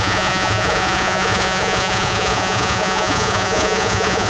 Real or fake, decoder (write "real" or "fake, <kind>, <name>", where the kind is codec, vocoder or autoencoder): fake, vocoder, Vocos